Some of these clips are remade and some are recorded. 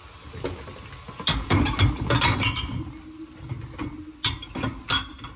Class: recorded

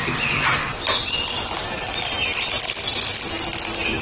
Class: recorded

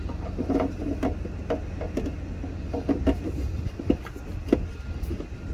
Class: recorded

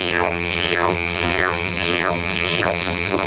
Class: remade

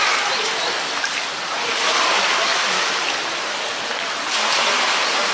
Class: recorded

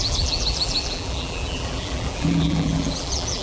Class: remade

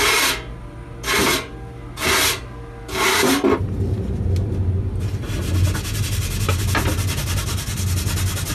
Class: recorded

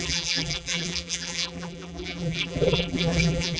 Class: remade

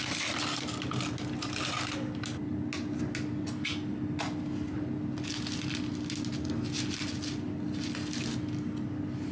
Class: recorded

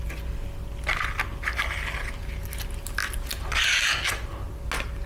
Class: recorded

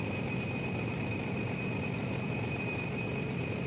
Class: remade